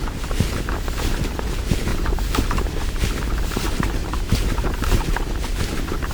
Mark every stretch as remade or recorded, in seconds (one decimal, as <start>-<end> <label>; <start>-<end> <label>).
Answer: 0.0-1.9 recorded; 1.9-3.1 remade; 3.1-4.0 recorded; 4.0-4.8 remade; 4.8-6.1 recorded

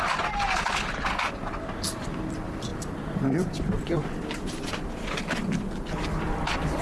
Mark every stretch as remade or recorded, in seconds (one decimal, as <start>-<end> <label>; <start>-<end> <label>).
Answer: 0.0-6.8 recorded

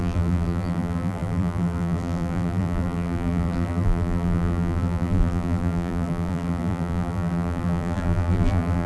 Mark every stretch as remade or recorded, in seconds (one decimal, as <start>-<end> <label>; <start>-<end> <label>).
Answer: 0.0-8.9 remade